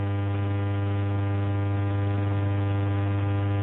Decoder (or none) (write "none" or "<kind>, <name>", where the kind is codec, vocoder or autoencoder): none